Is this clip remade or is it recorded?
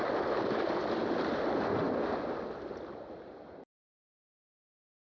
recorded